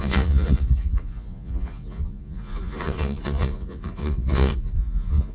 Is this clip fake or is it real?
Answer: fake